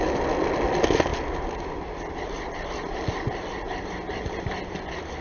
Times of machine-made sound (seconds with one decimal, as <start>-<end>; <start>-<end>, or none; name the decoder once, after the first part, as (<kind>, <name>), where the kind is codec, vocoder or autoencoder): none